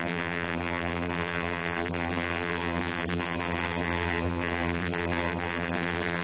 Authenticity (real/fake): fake